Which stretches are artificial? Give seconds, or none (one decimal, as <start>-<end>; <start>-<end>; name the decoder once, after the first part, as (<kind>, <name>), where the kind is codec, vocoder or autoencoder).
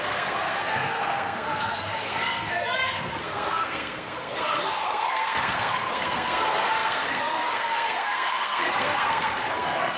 0.0-10.0 (codec, SNAC)